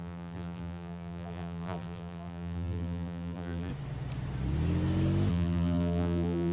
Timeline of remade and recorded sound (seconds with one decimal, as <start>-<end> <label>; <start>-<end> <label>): 0.0-3.7 remade; 3.7-5.3 recorded; 5.3-6.5 remade